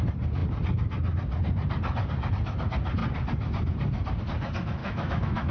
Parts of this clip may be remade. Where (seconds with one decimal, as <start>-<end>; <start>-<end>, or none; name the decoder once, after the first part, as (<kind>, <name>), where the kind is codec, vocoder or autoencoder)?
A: 4.8-5.5 (autoencoder, DAC-VAE)